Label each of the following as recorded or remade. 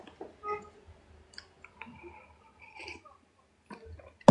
recorded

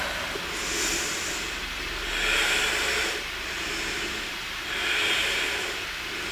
recorded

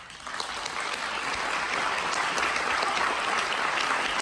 recorded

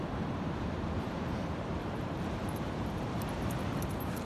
remade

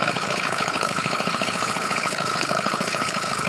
remade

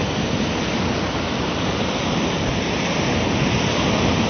recorded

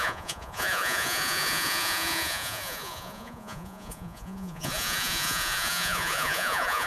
remade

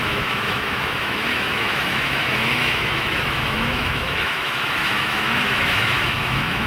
remade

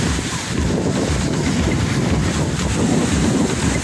recorded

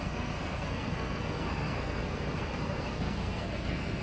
remade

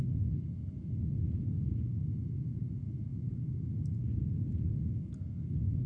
recorded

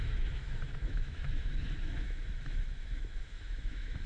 remade